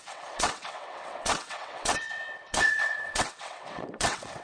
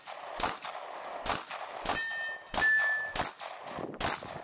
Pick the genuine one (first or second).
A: second